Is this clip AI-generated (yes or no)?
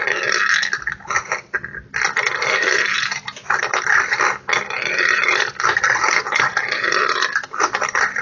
no